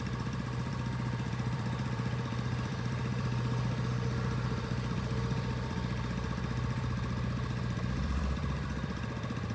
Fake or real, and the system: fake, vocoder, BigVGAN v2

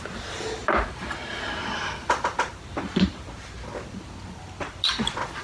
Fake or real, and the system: real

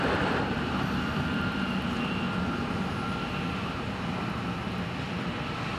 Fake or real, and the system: fake, vocoder, BigVGAN v2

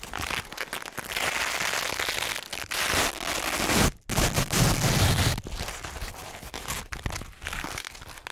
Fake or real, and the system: real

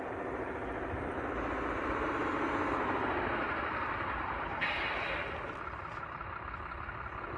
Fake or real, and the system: real